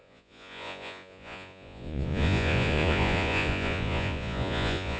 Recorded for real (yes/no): no